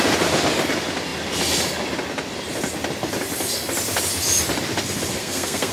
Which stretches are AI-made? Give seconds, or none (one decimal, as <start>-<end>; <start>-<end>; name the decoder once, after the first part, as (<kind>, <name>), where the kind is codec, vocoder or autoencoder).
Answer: 5.2-5.7 (codec, SNAC)